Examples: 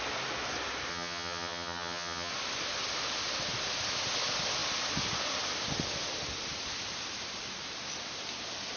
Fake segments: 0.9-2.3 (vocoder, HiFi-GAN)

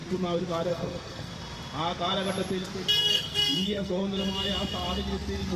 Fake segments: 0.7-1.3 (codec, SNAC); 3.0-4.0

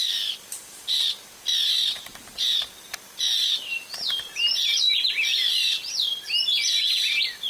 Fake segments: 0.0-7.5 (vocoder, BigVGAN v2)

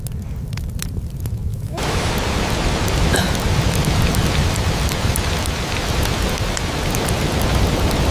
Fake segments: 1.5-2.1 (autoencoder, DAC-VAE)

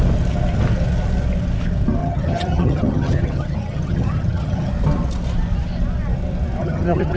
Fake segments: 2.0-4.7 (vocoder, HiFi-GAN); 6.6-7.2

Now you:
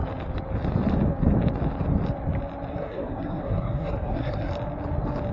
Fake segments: 2.7-4.5 (codec, SNAC)

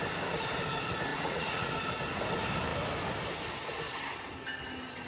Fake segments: 1.1-1.7 (vocoder, Vocos)

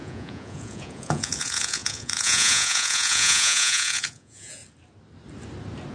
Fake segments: 0.0-4.6 (vocoder, Vocos)